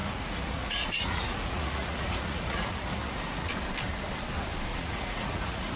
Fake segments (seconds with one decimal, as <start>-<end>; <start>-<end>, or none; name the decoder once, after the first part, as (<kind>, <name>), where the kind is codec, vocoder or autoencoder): 0.0-3.5 (vocoder, Vocos); 4.7-5.8